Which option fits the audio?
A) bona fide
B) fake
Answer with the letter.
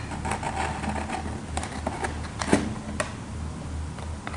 A